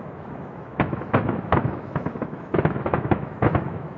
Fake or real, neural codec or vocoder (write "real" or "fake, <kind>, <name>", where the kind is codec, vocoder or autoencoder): fake, autoencoder, DAC-VAE